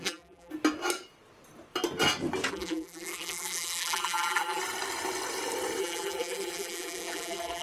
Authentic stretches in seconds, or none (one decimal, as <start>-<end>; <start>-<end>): 0.5-2.5; 4.6-5.8